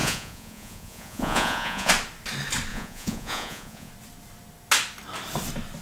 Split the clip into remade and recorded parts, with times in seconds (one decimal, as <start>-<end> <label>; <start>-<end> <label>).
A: 0.0-1.9 remade; 1.9-2.7 recorded; 2.7-3.9 remade; 3.9-5.8 recorded